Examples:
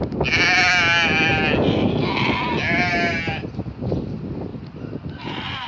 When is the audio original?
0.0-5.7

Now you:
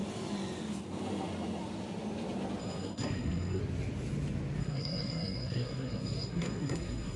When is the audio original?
0.0-2.6; 3.6-4.6

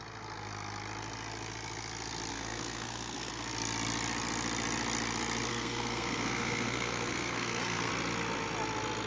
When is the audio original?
0.0-2.3; 3.3-5.5; 7.9-9.1

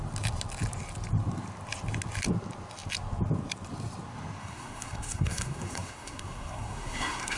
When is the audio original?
0.0-4.4